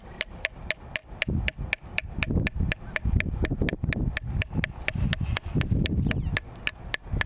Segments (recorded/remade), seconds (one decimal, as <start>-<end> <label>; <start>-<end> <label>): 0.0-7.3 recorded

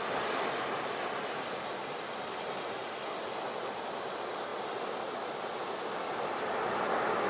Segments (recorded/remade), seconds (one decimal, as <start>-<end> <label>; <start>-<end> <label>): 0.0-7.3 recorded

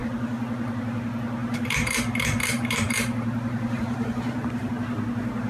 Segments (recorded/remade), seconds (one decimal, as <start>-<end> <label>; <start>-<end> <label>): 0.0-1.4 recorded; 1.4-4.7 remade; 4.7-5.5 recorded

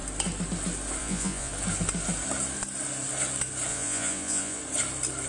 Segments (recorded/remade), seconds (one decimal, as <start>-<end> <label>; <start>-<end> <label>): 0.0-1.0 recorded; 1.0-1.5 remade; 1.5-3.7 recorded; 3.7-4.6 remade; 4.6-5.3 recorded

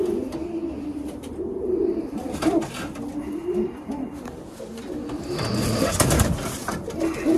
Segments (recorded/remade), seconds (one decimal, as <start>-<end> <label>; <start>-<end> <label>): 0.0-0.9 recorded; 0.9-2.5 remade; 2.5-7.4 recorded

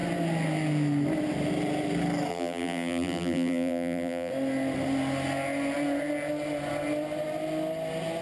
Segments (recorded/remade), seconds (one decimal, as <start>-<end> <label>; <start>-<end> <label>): 0.0-2.3 recorded; 2.3-4.3 remade; 4.3-8.2 recorded

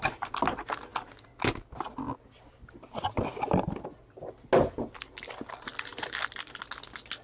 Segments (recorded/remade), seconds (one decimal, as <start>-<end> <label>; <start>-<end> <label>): 0.0-7.2 recorded

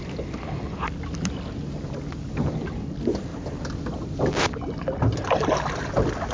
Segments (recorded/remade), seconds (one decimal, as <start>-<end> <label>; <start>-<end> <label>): 0.0-6.3 recorded